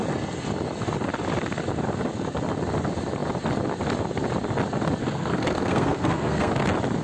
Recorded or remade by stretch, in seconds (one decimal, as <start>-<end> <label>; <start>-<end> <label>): 0.0-5.0 recorded; 5.0-6.5 remade; 6.5-7.0 recorded